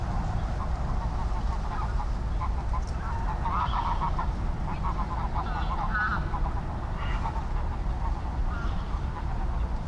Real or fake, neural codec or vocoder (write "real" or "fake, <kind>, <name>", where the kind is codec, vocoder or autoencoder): real